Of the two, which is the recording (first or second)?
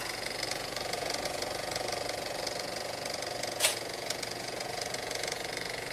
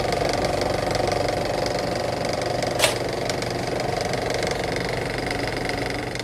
second